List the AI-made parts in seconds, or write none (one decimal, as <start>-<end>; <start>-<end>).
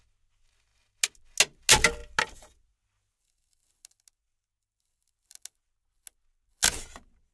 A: none